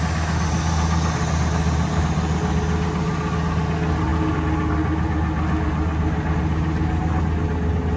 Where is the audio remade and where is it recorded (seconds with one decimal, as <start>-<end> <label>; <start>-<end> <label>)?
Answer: 0.0-8.0 recorded

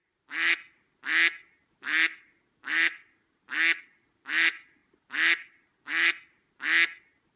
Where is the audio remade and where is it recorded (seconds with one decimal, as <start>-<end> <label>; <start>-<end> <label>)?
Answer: 0.0-7.4 recorded

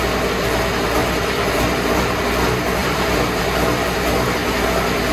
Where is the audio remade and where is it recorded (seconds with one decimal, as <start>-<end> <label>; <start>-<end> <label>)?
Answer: 0.0-1.0 recorded; 1.0-2.2 remade; 2.2-2.8 recorded; 2.8-3.4 remade; 3.4-5.1 recorded

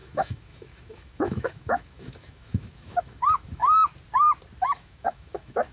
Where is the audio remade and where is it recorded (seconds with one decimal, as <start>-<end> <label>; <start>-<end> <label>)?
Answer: 0.0-3.6 remade; 3.6-4.6 recorded; 4.6-5.7 remade

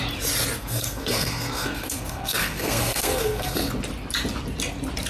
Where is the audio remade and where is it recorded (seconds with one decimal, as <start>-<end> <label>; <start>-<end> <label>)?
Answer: 0.0-0.6 recorded; 0.6-3.7 remade; 3.7-5.1 recorded